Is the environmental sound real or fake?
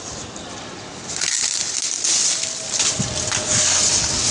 real